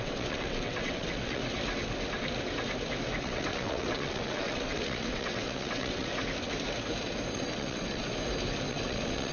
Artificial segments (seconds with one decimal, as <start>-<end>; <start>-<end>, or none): 0.0-1.4; 3.2-6.1; 7.3-8.0; 8.7-9.3